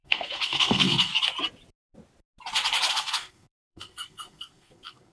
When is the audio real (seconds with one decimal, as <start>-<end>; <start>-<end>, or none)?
1.1-2.9

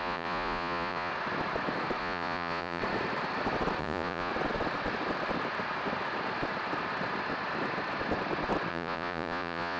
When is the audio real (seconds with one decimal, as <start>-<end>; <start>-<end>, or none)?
1.1-2.0; 2.8-3.8; 4.3-8.7

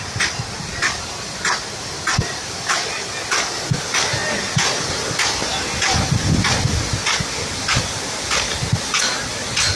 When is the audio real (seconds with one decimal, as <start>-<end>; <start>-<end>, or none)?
0.0-9.8

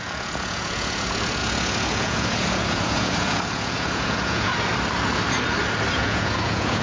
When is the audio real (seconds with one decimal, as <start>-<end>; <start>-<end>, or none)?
4.5-5.9

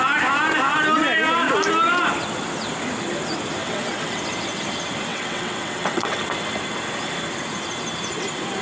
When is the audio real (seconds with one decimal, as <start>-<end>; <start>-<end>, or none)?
0.0-3.6; 4.2-5.1; 6.2-8.6

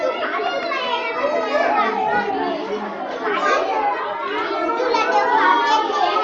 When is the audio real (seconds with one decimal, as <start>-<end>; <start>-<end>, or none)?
0.0-6.2